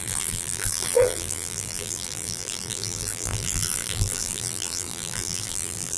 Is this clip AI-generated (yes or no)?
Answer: yes